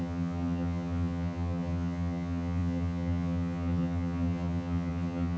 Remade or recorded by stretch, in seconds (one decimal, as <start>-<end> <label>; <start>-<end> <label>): 0.0-5.4 remade